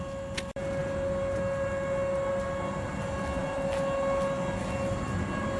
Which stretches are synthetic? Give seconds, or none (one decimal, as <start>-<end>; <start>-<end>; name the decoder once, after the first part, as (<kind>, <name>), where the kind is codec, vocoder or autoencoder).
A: none